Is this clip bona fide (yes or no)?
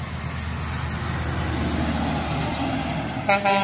yes